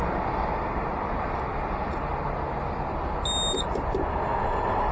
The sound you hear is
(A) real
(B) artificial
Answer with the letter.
A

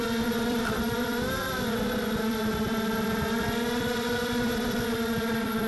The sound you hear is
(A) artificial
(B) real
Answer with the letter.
A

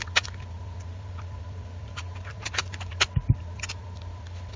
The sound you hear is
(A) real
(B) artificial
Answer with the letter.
B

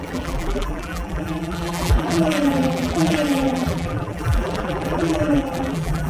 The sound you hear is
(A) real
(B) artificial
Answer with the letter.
B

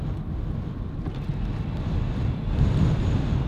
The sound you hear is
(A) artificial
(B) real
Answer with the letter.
B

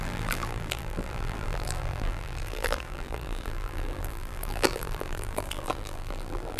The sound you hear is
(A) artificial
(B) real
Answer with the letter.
A